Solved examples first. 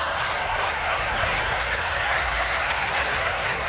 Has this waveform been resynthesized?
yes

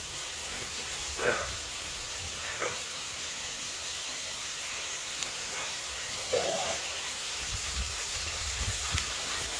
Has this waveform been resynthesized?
yes